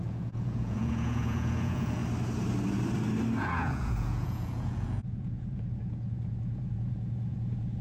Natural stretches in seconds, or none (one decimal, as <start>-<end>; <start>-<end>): 2.0-3.4